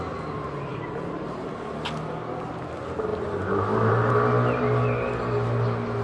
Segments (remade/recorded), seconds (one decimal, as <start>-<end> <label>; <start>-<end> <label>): 0.0-0.7 recorded; 0.7-1.4 remade; 1.4-3.1 recorded; 3.1-4.1 remade; 4.1-6.0 recorded